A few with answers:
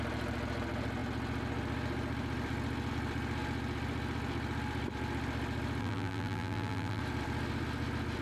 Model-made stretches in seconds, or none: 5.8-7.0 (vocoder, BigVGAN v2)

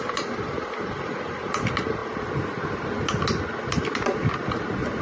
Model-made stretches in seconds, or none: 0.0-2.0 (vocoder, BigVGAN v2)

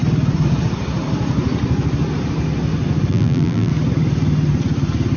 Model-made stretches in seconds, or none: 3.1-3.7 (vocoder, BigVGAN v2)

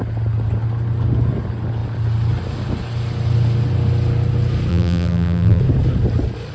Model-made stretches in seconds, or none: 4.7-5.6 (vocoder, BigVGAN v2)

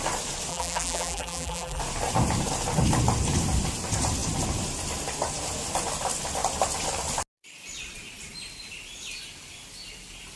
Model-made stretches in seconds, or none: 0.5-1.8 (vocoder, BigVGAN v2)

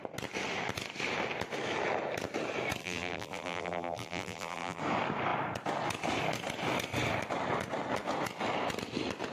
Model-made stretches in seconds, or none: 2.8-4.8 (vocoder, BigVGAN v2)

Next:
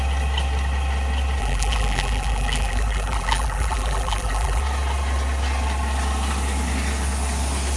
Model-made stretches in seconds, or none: 1.4-4.6 (vocoder, BigVGAN v2)

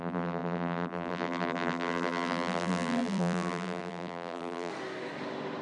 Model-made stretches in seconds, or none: 0.0-4.7 (vocoder, BigVGAN v2)